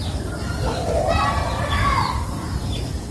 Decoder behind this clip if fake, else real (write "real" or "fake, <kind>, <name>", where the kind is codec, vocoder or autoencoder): real